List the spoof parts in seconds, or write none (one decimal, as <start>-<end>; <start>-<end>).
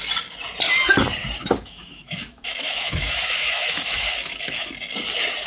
1.4-4.7